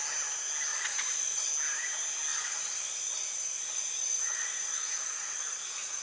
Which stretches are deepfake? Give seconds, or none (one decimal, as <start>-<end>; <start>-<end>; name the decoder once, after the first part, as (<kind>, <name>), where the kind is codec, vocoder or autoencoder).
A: 0.7-1.5 (vocoder, Vocos); 2.3-6.0

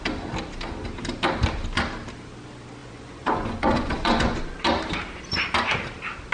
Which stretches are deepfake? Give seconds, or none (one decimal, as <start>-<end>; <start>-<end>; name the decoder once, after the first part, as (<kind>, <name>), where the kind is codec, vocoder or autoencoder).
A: 2.8-4.5 (vocoder, Vocos)

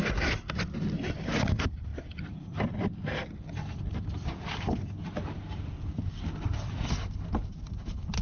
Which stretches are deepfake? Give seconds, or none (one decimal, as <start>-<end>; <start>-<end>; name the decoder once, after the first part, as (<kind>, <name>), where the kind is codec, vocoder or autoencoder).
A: none

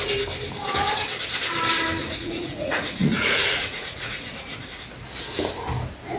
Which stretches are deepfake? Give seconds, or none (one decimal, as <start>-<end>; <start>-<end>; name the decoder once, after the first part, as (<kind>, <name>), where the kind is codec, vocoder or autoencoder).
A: 2.0-4.6 (vocoder, Vocos)

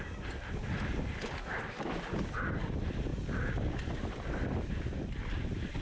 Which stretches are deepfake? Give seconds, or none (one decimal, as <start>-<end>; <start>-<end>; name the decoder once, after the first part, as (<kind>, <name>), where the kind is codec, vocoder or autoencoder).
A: none

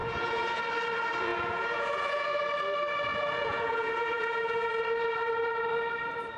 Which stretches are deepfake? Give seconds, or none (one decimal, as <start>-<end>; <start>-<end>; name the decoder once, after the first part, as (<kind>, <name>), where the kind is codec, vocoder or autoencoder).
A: 0.0-0.6 (vocoder, Vocos); 1.3-2.4; 3.1-4.7

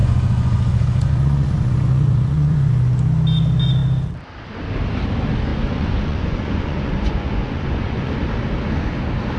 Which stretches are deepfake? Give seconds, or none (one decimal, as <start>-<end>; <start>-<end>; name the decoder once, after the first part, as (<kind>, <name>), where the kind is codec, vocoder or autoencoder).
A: 0.0-2.7 (vocoder, Vocos); 5.5-8.1

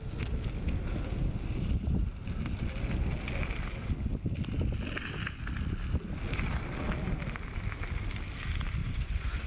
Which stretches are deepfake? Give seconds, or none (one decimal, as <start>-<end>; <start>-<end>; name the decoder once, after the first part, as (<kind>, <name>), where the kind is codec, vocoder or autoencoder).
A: 8.8-9.5 (vocoder, Vocos)